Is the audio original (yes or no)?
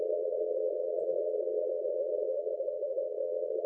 no